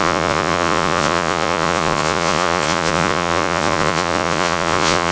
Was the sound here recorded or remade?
remade